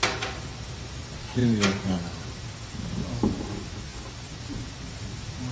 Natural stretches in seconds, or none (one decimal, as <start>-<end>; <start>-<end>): 0.0-5.5